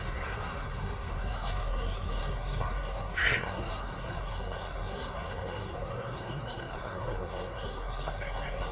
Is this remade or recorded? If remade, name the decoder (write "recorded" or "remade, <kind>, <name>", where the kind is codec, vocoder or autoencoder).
remade, codec, SNAC